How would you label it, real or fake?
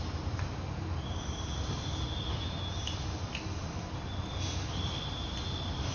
real